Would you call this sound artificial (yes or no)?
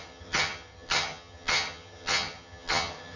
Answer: yes